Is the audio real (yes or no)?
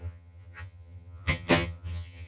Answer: no